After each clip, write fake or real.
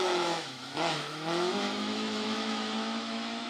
fake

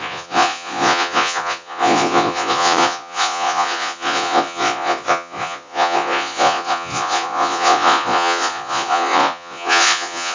fake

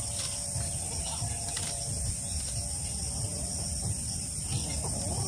real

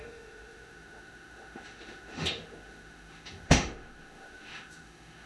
fake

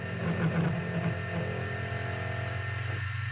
real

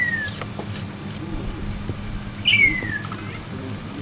real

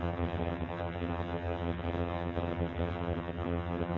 fake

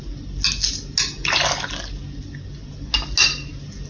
real